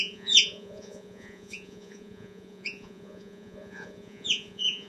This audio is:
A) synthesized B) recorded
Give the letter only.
A